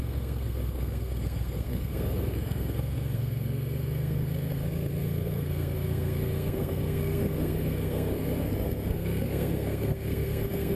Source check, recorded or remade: remade